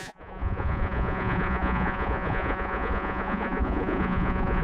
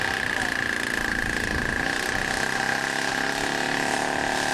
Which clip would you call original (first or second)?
second